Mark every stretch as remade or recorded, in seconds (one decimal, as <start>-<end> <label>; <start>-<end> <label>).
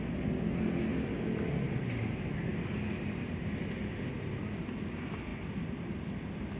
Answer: 0.0-6.6 recorded